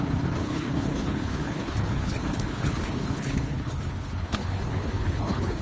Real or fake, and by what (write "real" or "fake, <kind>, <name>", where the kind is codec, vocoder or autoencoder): fake, codec, HILCodec